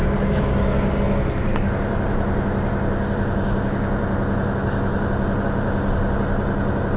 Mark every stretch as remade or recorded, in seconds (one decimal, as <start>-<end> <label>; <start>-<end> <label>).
0.0-1.0 remade; 1.0-7.0 recorded